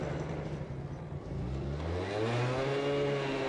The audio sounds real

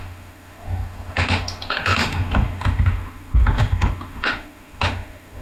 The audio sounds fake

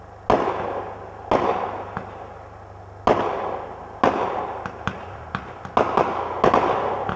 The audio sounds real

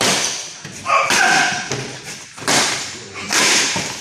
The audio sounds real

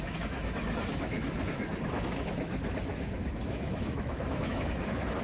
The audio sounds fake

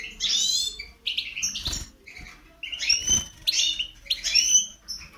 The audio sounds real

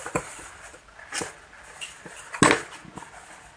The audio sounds real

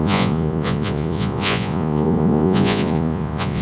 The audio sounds fake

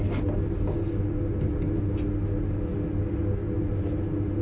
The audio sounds real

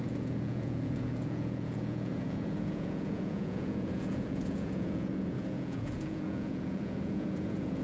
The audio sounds fake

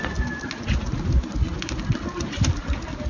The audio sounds real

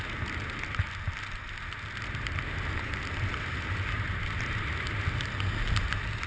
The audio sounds real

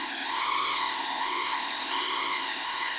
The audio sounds fake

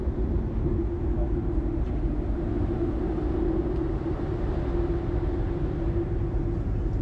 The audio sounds real